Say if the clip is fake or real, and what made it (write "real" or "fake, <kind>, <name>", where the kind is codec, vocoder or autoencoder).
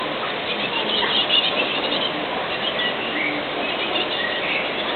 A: real